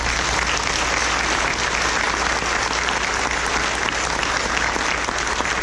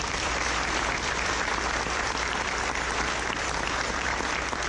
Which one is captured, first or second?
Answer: first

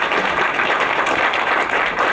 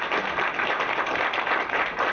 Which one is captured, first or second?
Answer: second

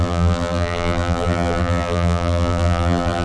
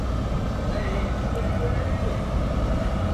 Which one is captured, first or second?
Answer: second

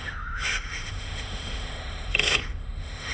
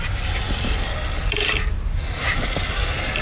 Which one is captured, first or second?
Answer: second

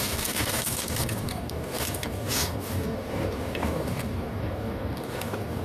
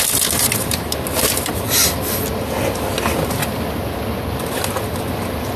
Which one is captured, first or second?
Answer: second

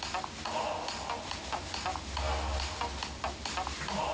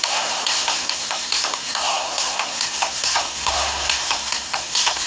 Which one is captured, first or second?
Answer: first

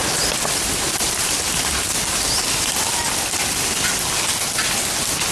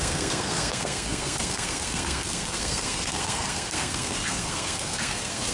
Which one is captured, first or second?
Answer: first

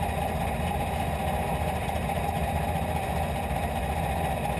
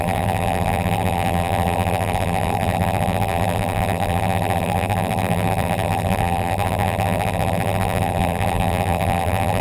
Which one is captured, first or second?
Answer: first